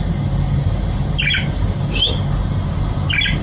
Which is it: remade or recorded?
recorded